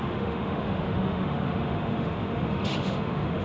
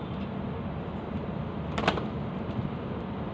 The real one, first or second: second